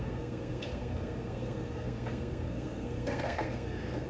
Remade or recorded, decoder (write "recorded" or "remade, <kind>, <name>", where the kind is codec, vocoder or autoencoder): remade, codec, SNAC